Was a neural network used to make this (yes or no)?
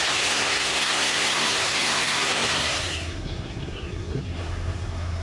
yes